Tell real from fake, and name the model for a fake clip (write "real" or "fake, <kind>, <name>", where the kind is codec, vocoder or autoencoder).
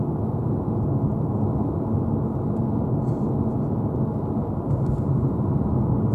real